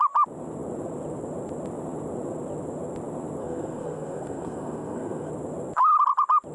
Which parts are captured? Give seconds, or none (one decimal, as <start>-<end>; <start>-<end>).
0.0-3.4; 5.3-6.5